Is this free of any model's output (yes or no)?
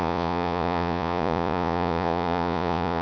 no